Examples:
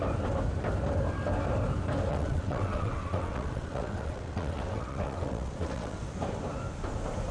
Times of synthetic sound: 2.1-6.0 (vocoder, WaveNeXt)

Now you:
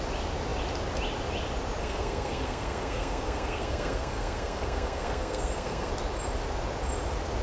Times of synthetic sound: 1.8-5.9 (codec, SNAC)

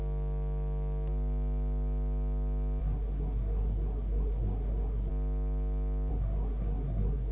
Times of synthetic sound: 2.8-5.1 (codec, SNAC); 6.1-7.3

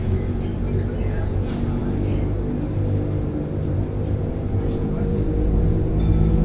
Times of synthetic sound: 0.0-0.5 (vocoder, Vocos); 1.1-1.8; 4.2-6.4

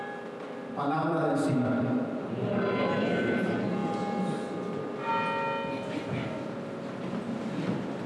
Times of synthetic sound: 0.0-3.8 (vocoder, BigVGAN v2)

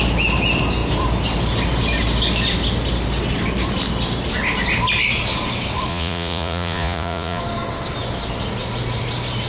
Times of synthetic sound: 5.9-7.4 (vocoder, Vocos)

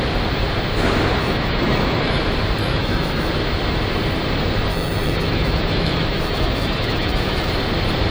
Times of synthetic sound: 1.2-2.2 (autoencoder, DAC-VAE); 2.6-3.3; 4.7-7.5